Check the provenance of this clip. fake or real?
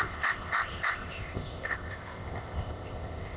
fake